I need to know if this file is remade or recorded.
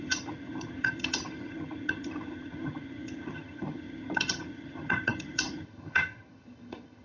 remade